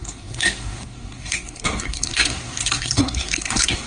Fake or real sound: fake